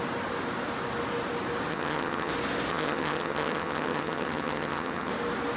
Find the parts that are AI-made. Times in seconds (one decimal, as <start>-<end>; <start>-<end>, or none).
1.7-2.3; 2.7-5.1